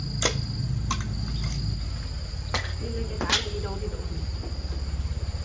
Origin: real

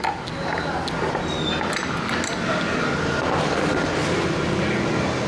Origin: real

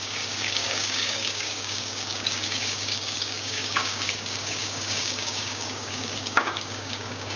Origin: fake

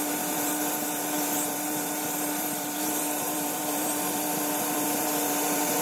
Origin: fake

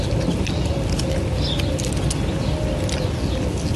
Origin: real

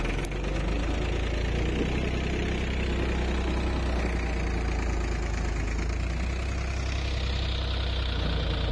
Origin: real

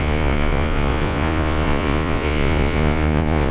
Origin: fake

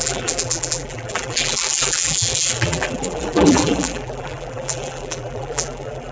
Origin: fake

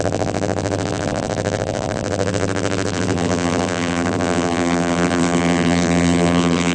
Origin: fake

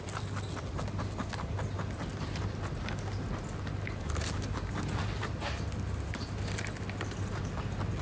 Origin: real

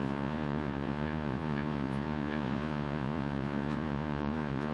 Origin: fake